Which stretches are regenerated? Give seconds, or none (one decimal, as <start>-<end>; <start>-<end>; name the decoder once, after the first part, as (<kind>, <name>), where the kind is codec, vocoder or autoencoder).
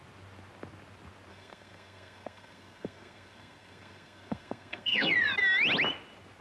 1.3-5.1 (codec, SNAC)